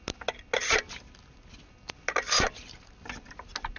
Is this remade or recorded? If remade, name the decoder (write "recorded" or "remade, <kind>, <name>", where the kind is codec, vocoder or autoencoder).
recorded